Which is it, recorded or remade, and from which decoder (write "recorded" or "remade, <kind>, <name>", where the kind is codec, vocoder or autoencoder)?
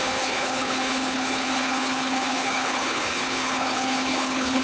remade, codec, HILCodec